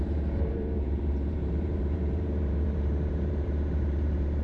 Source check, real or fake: fake